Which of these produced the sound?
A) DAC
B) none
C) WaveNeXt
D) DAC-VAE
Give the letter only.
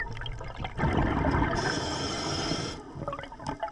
B